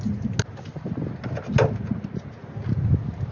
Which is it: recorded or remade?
recorded